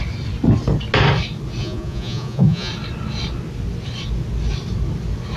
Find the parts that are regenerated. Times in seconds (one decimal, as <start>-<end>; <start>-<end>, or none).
1.6-2.7